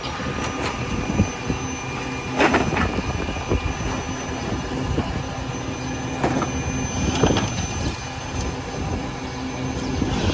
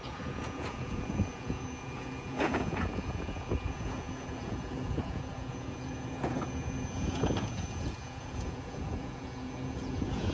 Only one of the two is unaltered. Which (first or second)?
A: first